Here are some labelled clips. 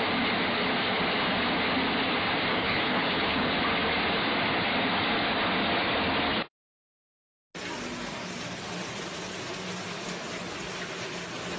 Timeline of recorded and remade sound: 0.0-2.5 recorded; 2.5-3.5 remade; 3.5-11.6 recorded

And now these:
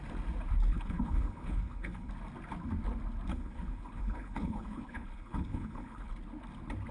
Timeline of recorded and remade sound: 0.0-0.7 recorded; 0.7-2.1 remade; 2.1-3.3 recorded; 3.3-6.1 remade; 6.1-6.9 recorded

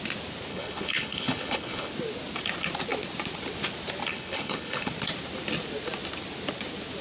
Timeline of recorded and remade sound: 0.0-0.5 recorded; 0.5-1.9 remade; 1.9-4.1 recorded; 4.1-4.9 remade; 4.9-7.0 recorded

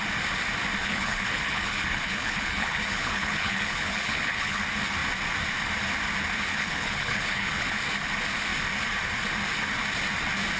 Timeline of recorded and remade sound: 0.0-0.8 recorded; 0.8-4.6 remade; 4.6-6.5 recorded; 6.5-7.8 remade; 7.8-10.6 recorded

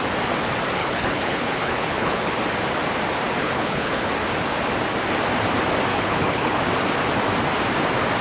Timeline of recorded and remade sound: 0.0-0.8 recorded; 0.8-2.3 remade; 2.3-3.4 recorded; 3.4-4.1 remade; 4.1-5.9 recorded; 5.9-6.6 remade; 6.6-8.2 recorded

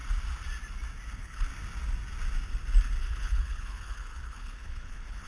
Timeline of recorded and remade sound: 0.0-1.1 recorded; 1.1-1.5 remade; 1.5-3.0 recorded; 3.0-5.3 remade

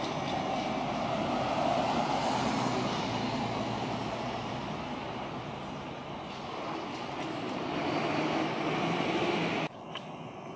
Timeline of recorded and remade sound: 0.0-10.6 recorded

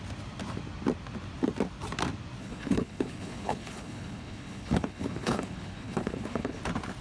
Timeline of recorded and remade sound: 0.0-2.4 recorded; 2.4-6.6 remade; 6.6-7.0 recorded